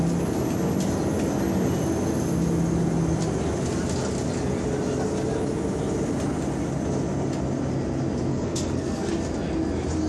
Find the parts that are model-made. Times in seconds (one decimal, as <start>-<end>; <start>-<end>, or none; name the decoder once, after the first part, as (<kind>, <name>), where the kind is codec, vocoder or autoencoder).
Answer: 8.3-9.1 (codec, SNAC)